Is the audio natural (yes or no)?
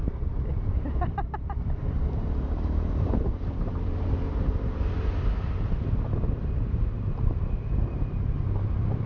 no